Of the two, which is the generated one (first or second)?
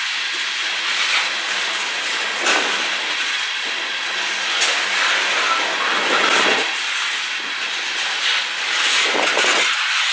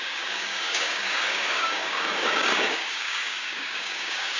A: second